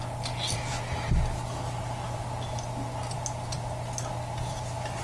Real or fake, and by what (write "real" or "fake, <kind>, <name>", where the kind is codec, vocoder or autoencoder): real